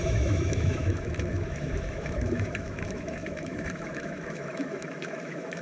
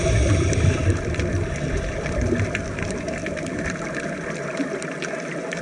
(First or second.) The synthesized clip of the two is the first